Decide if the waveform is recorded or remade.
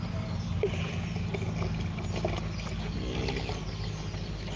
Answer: recorded